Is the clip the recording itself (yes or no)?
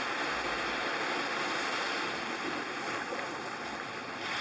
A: yes